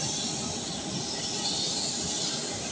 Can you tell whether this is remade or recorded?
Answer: recorded